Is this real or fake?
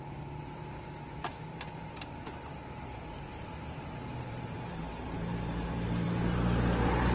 fake